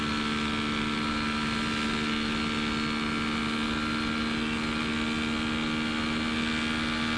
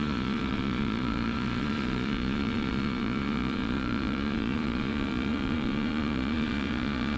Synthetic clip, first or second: second